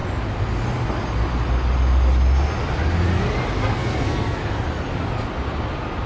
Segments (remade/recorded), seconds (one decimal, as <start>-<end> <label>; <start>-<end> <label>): 0.0-3.7 recorded; 3.7-4.4 remade; 4.4-6.1 recorded